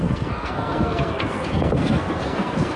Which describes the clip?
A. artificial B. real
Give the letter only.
A